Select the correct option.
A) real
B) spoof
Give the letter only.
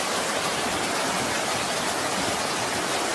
A